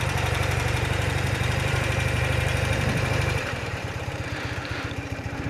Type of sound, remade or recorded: remade